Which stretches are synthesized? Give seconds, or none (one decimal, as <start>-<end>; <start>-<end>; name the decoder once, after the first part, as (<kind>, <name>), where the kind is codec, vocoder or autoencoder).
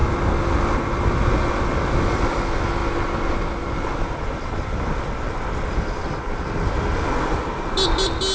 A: none